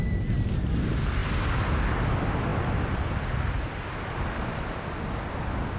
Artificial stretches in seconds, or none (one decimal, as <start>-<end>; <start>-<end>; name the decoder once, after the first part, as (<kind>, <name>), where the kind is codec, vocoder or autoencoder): none